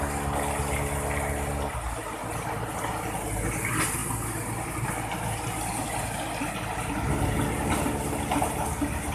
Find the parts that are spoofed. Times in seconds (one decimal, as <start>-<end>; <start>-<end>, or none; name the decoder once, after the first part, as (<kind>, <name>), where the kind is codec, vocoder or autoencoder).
none